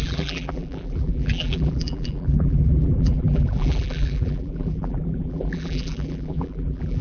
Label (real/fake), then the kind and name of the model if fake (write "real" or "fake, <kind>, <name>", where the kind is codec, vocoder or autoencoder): fake, vocoder, BigVGAN v2